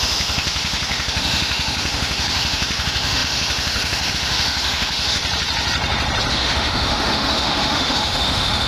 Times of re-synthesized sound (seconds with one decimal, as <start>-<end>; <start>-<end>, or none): 0.0-5.2; 6.3-8.7